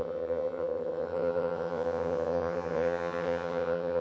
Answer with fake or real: fake